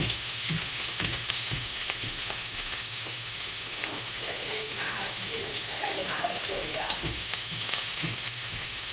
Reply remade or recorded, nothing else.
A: remade